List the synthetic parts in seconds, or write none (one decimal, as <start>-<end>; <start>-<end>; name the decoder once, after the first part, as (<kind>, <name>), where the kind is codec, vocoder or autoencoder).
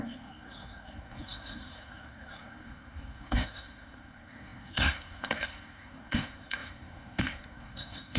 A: 0.0-8.2 (codec, SNAC)